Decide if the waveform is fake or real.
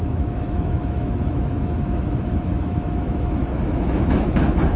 fake